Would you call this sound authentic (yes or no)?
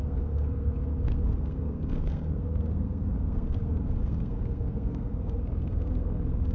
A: no